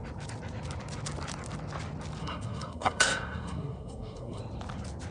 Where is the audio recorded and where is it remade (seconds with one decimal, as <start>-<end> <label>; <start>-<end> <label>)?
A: 0.0-2.2 recorded; 2.2-4.4 remade; 4.4-5.1 recorded